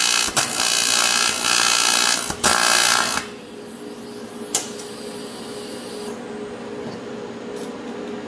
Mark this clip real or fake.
real